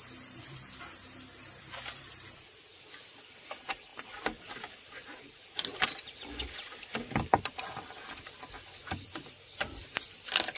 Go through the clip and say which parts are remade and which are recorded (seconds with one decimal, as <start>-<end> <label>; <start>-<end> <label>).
0.0-9.8 recorded; 9.8-10.6 remade